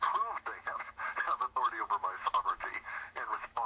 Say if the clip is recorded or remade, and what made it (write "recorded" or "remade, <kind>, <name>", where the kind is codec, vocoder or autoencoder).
remade, autoencoder, DAC-VAE